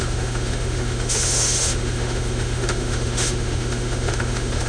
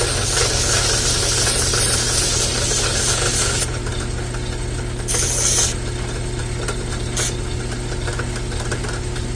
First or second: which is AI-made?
first